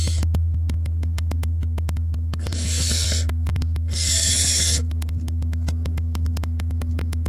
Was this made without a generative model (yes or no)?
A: no